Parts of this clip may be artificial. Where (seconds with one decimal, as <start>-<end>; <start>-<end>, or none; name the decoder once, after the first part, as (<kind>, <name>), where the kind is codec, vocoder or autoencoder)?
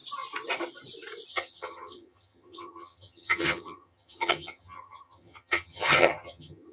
1.3-6.7 (vocoder, HiFi-GAN)